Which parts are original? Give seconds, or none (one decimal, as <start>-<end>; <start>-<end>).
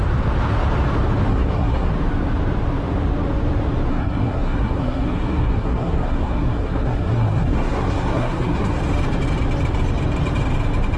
0.0-1.3; 1.9-3.9; 8.8-11.0